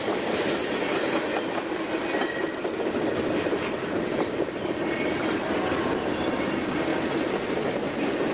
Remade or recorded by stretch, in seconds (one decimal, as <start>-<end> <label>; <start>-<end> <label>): 0.0-8.3 recorded